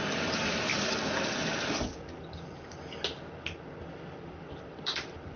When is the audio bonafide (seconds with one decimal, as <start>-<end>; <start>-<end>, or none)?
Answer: 0.7-3.9